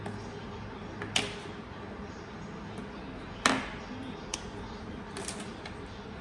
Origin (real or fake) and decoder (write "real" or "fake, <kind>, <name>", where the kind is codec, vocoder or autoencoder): real